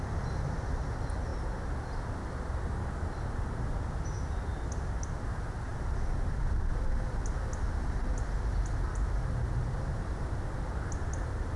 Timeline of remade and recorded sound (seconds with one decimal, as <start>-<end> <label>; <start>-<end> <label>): 0.0-5.7 recorded; 5.7-6.8 remade; 6.8-11.6 recorded